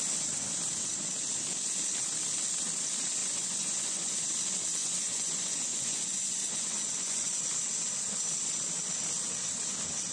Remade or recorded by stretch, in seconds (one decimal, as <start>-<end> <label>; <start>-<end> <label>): 0.0-3.2 recorded; 3.2-4.1 remade; 4.1-4.8 recorded; 4.8-7.4 remade; 7.4-10.1 recorded